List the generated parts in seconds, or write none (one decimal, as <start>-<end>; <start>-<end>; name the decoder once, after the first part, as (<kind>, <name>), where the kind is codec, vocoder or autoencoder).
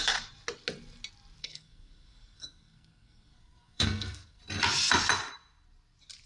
1.4-4.4 (codec, SNAC)